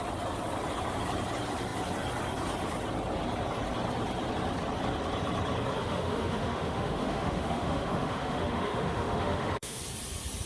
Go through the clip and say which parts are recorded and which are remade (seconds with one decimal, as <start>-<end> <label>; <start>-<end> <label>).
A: 0.0-5.8 recorded; 5.8-9.8 remade; 9.8-10.5 recorded